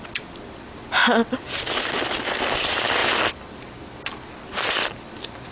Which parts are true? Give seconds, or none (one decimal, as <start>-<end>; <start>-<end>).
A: 0.0-5.5